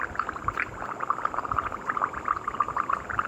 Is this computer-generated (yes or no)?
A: no